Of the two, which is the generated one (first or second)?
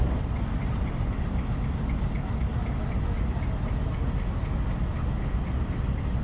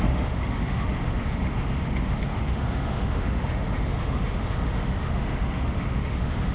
second